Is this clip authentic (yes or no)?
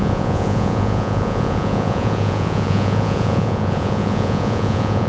no